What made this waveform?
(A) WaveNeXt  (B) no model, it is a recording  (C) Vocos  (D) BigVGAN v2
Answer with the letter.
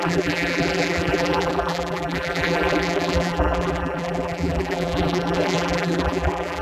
D